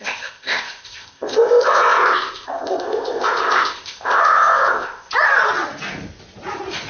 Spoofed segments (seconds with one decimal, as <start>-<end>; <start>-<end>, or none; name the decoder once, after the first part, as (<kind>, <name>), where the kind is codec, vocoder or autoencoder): 0.0-5.1 (codec, ZipCodec)